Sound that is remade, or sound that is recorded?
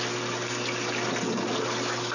recorded